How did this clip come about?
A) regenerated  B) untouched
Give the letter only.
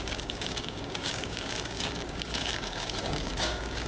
A